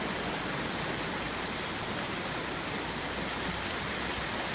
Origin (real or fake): real